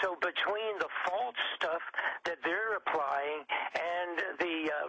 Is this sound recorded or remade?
recorded